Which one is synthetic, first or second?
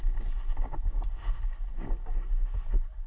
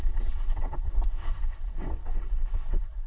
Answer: second